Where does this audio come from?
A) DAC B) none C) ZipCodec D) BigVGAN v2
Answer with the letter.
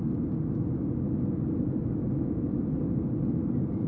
B